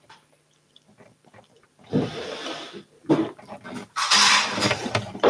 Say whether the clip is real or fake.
fake